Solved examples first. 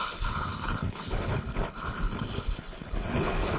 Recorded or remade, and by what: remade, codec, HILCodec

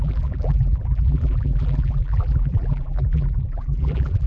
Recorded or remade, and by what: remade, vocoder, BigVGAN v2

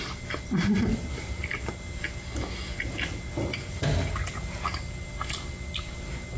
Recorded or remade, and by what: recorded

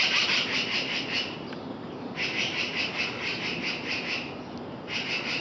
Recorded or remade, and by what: remade, vocoder, BigVGAN v2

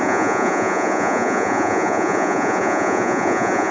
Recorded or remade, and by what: remade, vocoder, Vocos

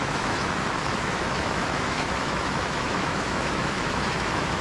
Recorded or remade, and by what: remade, autoencoder, DAC-VAE